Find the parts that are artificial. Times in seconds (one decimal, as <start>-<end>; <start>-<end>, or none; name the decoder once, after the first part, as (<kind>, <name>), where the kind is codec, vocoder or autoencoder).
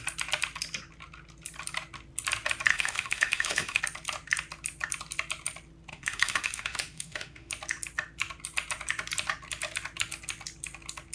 2.7-3.8 (autoencoder, DAC-VAE); 5.9-7.5